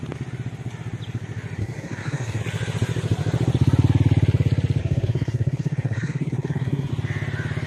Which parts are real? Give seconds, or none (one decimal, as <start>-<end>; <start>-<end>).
0.0-1.6; 2.4-4.8; 6.9-7.7